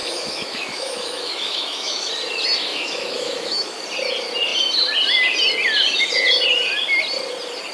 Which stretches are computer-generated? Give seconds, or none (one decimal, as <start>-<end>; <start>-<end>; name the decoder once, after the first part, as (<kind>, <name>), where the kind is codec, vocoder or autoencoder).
0.0-2.1 (autoencoder, DAC-VAE); 2.7-3.8